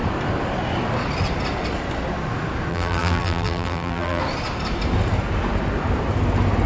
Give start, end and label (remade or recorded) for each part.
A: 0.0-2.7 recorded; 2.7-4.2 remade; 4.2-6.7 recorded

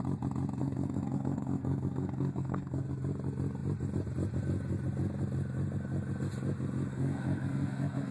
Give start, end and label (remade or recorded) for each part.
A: 0.0-0.6 recorded; 0.6-2.9 remade; 2.9-6.9 recorded; 6.9-8.1 remade

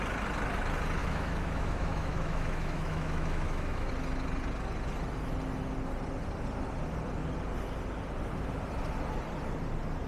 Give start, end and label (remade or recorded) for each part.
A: 0.0-1.0 recorded; 1.0-3.9 remade; 3.9-10.1 recorded

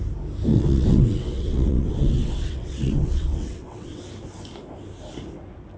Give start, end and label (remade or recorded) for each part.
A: 0.0-0.5 recorded; 0.5-4.0 remade; 4.0-5.8 recorded